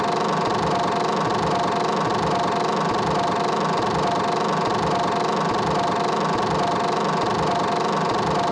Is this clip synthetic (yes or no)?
no